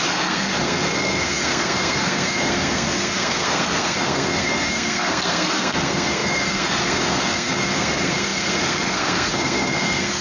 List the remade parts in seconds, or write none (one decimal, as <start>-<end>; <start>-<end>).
0.0-10.2